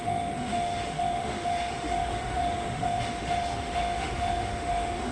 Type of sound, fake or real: fake